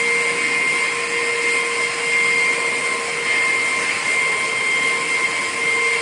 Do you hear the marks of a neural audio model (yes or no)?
no